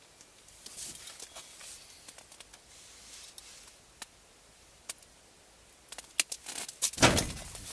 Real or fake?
real